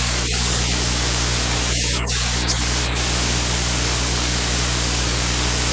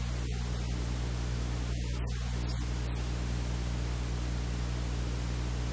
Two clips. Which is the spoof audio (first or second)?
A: first